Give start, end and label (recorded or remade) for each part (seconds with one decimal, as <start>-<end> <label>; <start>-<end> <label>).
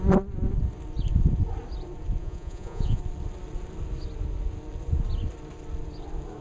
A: 0.0-2.2 recorded; 2.2-3.0 remade; 3.0-6.4 recorded